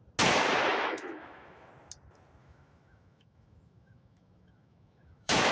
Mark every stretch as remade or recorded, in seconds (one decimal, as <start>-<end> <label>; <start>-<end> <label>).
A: 0.0-0.7 recorded; 0.7-1.7 remade; 1.7-2.4 recorded; 2.4-5.5 remade